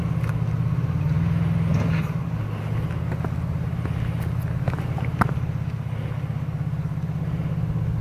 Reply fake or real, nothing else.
real